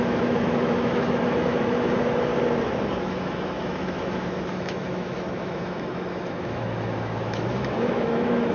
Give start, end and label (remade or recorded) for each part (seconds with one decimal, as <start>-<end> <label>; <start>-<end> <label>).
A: 0.0-2.3 remade; 2.3-3.0 recorded; 3.0-8.5 remade